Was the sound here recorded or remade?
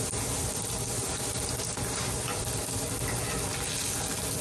recorded